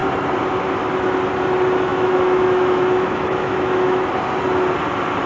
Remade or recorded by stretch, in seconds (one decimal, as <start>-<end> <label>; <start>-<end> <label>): 0.0-1.9 recorded; 1.9-4.1 remade; 4.1-5.3 recorded